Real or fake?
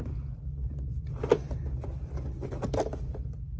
real